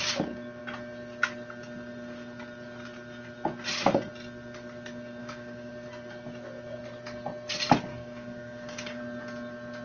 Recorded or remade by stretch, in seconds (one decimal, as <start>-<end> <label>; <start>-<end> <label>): 0.0-5.2 recorded; 5.2-5.7 remade; 5.7-7.9 recorded; 7.9-9.0 remade; 9.0-9.8 recorded